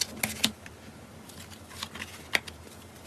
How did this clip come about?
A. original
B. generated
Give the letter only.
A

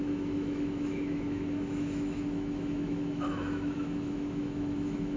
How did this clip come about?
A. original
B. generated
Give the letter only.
B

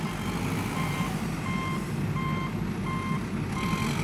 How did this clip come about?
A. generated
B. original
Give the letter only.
B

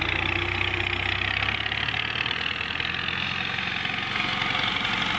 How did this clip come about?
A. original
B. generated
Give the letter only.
A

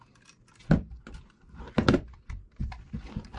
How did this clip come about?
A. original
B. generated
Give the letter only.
A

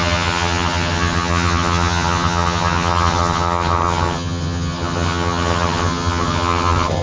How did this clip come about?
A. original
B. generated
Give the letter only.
B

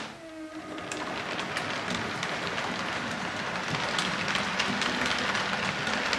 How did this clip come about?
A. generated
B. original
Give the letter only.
B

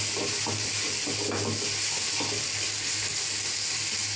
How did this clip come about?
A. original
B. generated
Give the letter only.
A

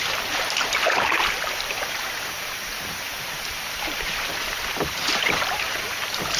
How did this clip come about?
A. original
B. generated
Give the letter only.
B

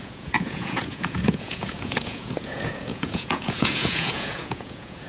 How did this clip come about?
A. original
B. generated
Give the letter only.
B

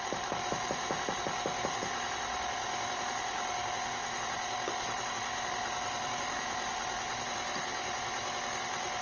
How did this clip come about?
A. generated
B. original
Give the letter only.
A